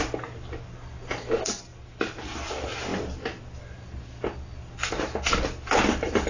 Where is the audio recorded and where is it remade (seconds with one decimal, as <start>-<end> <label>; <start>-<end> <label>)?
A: 0.0-6.3 recorded